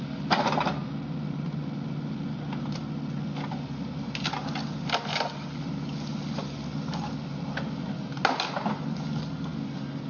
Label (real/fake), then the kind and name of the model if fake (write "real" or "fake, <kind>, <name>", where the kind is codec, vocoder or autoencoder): real